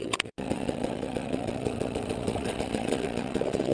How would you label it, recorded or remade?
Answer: remade